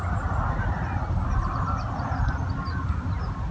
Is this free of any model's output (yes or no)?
yes